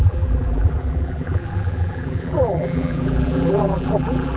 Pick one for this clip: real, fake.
fake